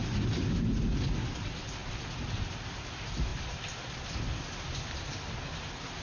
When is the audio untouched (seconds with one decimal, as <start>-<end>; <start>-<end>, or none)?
0.0-1.8; 2.5-6.0